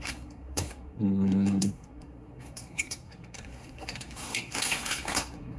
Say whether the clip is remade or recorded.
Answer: remade